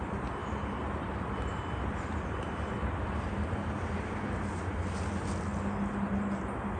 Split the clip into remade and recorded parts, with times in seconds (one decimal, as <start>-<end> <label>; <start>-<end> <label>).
0.0-0.4 recorded; 0.4-4.5 remade; 4.5-6.8 recorded